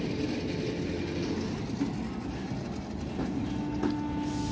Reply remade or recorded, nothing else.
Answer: recorded